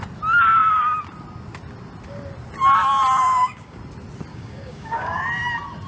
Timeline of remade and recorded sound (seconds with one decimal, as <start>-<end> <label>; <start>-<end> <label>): 0.0-3.3 recorded; 3.3-3.8 remade; 3.8-4.3 recorded; 4.3-5.2 remade; 5.2-5.9 recorded